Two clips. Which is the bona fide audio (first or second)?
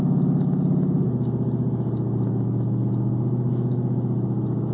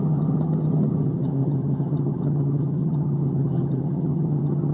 first